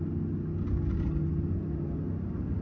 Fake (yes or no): no